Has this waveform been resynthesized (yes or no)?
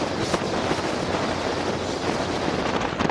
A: no